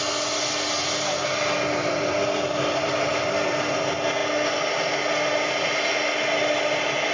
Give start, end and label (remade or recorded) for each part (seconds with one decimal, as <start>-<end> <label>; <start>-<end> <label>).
0.0-7.1 recorded